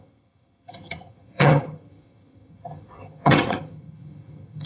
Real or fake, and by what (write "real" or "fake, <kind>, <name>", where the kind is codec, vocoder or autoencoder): fake, vocoder, HiFi-GAN